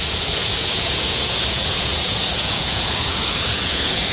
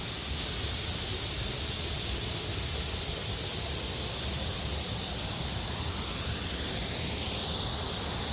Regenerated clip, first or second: first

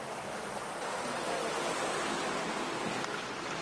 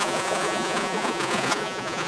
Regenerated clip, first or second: second